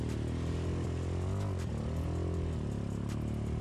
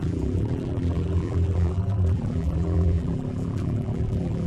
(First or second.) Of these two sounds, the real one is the first